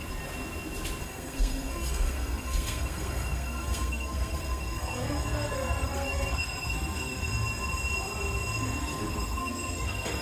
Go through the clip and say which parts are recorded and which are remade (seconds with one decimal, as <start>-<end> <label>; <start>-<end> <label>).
0.0-1.0 recorded; 1.0-7.3 remade; 7.3-8.8 recorded; 8.8-10.2 remade